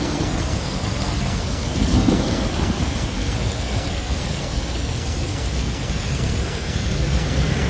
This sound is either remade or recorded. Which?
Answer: remade